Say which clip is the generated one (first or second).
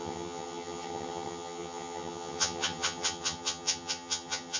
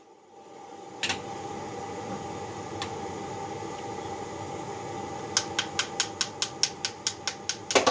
first